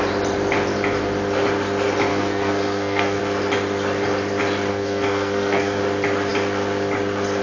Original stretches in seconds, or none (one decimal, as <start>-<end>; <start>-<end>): 0.0-2.1; 3.2-4.7; 5.8-7.4